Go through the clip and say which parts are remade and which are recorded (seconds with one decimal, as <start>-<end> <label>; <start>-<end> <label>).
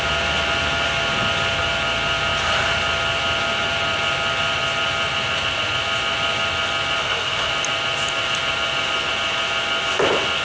0.0-7.0 recorded; 7.0-7.5 remade; 7.5-10.4 recorded